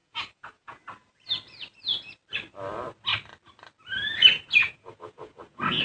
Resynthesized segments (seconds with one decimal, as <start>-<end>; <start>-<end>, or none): 0.0-0.8; 4.6-5.8